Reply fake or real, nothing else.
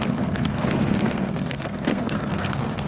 fake